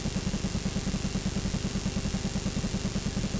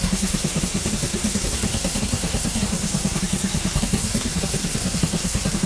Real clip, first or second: first